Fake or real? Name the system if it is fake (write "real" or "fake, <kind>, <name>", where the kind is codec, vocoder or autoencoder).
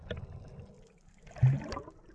real